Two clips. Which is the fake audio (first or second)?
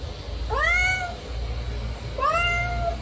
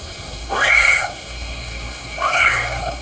second